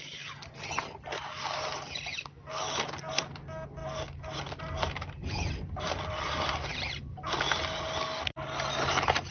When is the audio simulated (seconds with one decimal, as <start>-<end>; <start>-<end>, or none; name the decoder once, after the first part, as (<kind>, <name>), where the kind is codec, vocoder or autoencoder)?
none